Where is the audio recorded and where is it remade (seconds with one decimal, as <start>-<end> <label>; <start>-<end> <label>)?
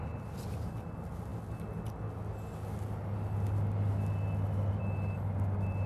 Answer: 0.0-5.9 recorded